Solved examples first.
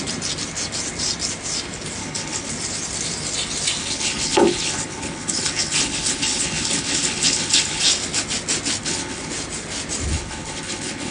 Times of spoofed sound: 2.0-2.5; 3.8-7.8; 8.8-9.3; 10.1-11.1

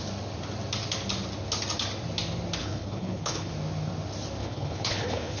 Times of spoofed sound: 2.6-3.5; 4.4-5.4